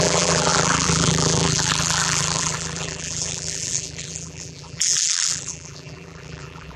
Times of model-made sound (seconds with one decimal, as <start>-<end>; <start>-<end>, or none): 0.0-6.8